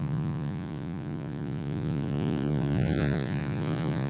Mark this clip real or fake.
fake